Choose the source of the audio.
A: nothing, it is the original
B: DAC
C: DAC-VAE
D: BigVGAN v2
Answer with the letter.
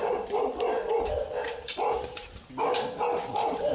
A